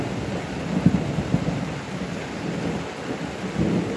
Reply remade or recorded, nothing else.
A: recorded